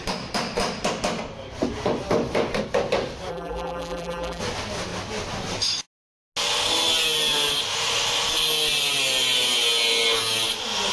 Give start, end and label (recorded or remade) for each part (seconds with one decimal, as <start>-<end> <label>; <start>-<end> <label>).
0.0-3.3 recorded; 3.3-4.4 remade; 4.4-10.9 recorded